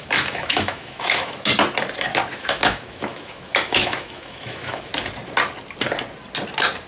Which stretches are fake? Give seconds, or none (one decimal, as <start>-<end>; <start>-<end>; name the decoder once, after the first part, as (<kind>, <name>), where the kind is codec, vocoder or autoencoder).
0.0-1.5 (autoencoder, DAC-VAE); 2.3-4.9